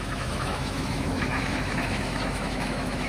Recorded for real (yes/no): no